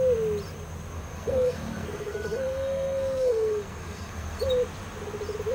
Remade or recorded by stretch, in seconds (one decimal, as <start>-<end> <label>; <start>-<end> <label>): 0.0-1.1 recorded; 1.1-4.4 remade; 4.4-5.5 recorded